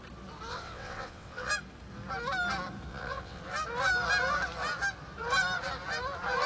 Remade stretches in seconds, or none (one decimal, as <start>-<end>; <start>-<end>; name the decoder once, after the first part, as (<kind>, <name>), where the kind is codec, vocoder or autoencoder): 0.5-1.5 (vocoder, WaveNeXt); 2.9-3.4